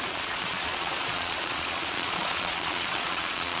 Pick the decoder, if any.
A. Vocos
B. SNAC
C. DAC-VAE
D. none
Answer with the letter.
A